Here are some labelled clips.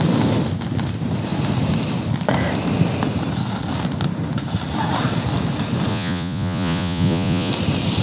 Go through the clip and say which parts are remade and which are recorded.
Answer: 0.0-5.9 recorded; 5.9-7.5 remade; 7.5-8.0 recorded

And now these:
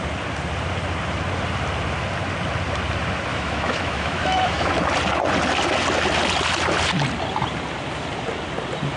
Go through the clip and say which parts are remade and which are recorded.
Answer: 0.0-3.3 recorded; 3.3-4.7 remade; 4.7-9.0 recorded

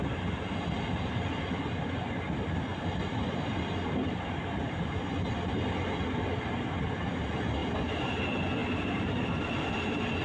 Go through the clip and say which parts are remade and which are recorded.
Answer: 0.0-2.7 recorded; 2.7-5.0 remade; 5.0-8.6 recorded; 8.6-9.6 remade; 9.6-10.2 recorded

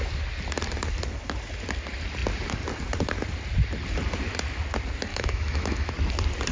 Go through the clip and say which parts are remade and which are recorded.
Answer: 0.0-5.1 recorded; 5.1-5.9 remade; 5.9-6.5 recorded

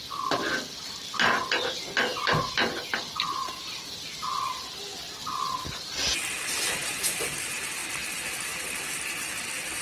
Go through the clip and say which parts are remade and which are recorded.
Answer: 0.0-9.8 recorded